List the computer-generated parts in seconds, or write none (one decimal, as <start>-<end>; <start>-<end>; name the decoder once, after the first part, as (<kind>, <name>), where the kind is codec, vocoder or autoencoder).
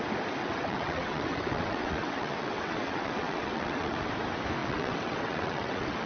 0.4-4.1 (vocoder, WaveNeXt); 4.6-6.1